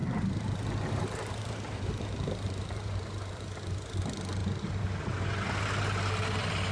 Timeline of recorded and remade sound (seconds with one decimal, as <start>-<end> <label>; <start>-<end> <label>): 0.0-4.0 remade; 4.0-4.4 recorded; 4.4-5.0 remade; 5.0-6.7 recorded

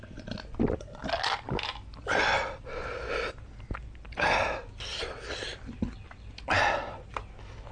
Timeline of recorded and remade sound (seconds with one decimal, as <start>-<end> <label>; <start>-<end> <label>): 0.0-4.9 recorded; 4.9-5.8 remade; 5.8-7.7 recorded

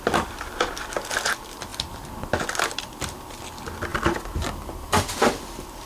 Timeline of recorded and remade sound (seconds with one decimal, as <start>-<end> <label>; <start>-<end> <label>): 0.0-3.9 recorded; 3.9-5.3 remade; 5.3-5.9 recorded